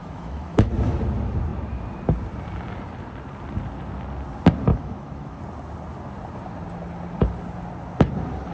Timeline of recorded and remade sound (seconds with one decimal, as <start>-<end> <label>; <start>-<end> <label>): 0.0-0.7 remade; 0.7-4.7 recorded; 4.7-5.4 remade; 5.4-8.5 recorded